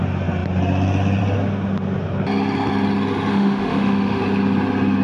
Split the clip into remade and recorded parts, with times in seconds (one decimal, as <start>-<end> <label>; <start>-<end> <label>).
0.0-3.3 recorded; 3.3-4.2 remade; 4.2-5.0 recorded